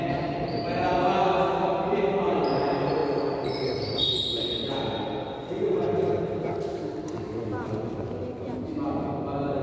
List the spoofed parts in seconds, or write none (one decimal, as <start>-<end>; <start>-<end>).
none